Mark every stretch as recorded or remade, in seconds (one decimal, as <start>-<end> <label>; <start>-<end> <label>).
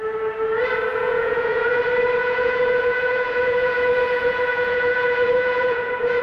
0.0-0.9 recorded; 0.9-1.8 remade; 1.8-2.2 recorded; 2.2-6.2 remade